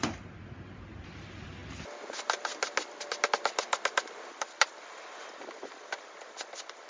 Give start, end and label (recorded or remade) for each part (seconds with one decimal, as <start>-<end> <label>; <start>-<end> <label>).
0.0-6.9 recorded